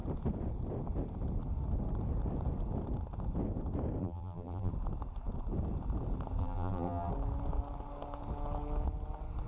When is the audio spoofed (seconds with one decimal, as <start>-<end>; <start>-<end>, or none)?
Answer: 4.0-4.7; 6.4-7.1